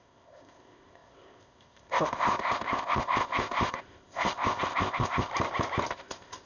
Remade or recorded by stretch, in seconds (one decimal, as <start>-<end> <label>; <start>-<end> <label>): 0.0-5.3 remade; 5.3-5.9 recorded; 5.9-6.5 remade